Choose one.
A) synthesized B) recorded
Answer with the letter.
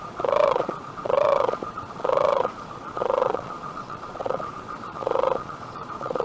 A